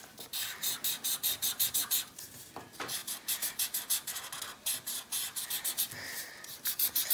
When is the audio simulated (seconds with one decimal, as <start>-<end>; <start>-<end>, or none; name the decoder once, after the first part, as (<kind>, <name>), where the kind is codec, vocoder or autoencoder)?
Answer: none